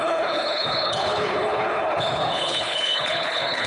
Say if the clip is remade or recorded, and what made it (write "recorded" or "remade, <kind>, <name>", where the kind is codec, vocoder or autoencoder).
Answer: remade, codec, HILCodec